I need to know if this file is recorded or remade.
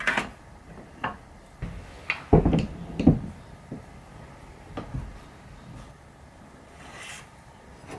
recorded